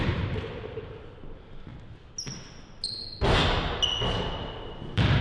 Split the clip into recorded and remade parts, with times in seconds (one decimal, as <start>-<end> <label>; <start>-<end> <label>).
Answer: 0.0-1.7 remade; 1.7-4.8 recorded; 4.8-5.2 remade